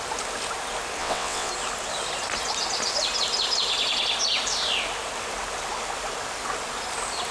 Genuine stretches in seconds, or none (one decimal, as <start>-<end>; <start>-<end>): 0.0-1.0; 1.5-7.3

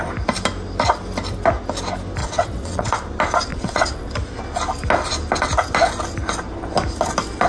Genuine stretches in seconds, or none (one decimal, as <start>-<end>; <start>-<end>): 0.0-2.2; 2.9-3.5; 4.1-7.5

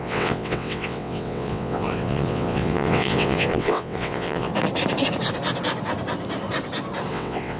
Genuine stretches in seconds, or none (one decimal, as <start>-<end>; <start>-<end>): 4.5-7.1

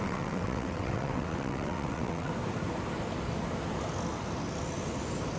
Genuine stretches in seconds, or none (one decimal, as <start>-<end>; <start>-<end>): 2.3-5.4

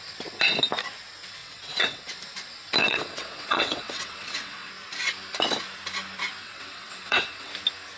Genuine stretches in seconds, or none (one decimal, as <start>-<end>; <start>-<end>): 0.0-1.4; 2.1-2.8; 4.7-6.4; 7.5-8.0